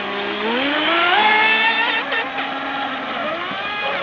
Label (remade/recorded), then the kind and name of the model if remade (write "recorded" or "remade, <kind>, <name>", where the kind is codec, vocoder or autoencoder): recorded